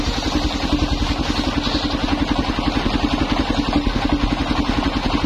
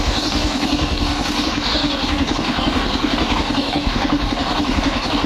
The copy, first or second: second